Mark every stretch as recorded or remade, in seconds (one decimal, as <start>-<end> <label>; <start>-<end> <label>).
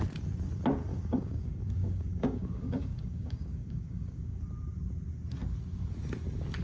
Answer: 0.0-0.9 recorded; 0.9-4.4 remade; 4.4-6.6 recorded